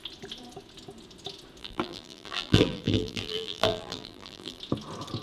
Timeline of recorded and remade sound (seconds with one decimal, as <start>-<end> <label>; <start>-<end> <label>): 0.0-1.6 recorded; 1.6-4.6 remade; 4.6-5.2 recorded

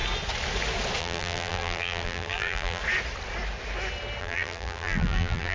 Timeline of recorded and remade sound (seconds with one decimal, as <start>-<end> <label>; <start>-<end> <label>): 0.0-1.0 recorded; 1.0-2.8 remade; 2.8-4.2 recorded; 4.2-5.5 remade

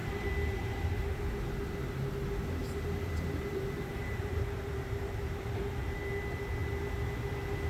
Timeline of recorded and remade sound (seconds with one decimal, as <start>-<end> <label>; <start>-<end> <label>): 0.0-1.2 remade; 1.2-2.6 recorded; 2.6-6.0 remade; 6.0-7.7 recorded

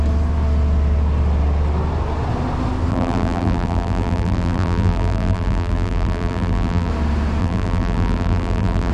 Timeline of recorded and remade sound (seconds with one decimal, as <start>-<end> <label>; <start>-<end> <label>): 0.0-2.9 recorded; 2.9-6.9 remade; 6.9-7.4 recorded; 7.4-8.9 remade

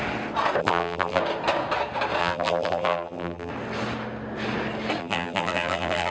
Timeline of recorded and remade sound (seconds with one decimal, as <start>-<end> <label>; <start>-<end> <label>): 0.0-0.6 recorded; 0.6-1.2 remade; 1.2-2.2 recorded; 2.2-3.5 remade; 3.5-5.0 recorded; 5.0-6.1 remade

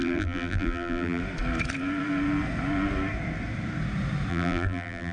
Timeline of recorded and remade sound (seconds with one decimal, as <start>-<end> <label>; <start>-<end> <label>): 0.0-1.2 remade; 1.2-4.3 recorded; 4.3-5.1 remade

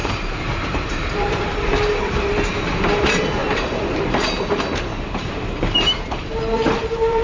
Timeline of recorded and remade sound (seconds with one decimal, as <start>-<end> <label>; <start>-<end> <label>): 0.0-7.2 remade